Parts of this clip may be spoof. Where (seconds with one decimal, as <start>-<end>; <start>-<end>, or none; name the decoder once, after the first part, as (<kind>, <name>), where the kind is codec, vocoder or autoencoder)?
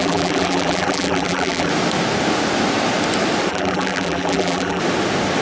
0.0-1.7 (vocoder, BigVGAN v2); 3.5-4.8